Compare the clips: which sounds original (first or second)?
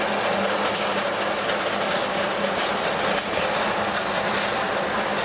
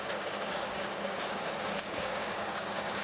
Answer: first